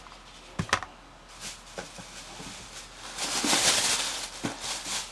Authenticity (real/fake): real